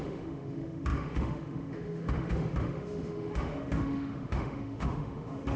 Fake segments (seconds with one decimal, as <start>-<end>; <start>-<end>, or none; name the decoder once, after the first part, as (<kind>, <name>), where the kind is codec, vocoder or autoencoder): 0.0-5.6 (autoencoder, DAC-VAE)